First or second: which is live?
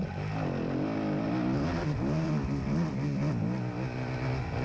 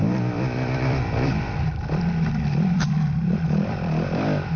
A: first